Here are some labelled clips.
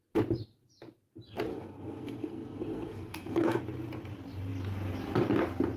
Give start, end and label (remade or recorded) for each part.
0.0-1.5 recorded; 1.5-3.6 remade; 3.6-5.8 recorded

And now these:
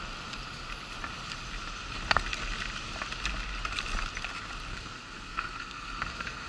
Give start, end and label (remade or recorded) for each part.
0.0-4.7 recorded; 4.7-6.5 remade

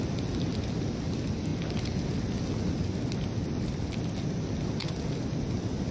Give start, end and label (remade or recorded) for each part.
0.0-5.9 recorded

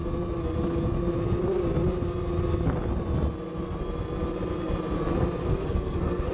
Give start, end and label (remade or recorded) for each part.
0.0-5.4 recorded; 5.4-6.3 remade